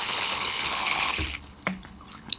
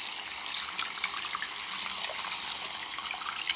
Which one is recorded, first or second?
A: second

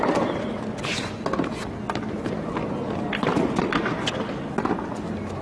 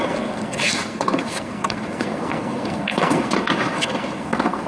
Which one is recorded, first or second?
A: first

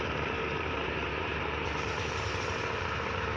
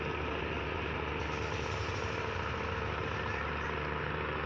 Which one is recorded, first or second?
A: second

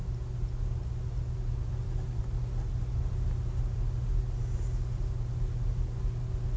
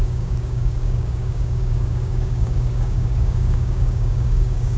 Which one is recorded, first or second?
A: first